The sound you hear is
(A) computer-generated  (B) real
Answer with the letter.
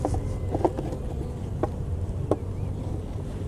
B